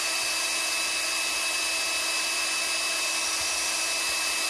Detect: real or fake real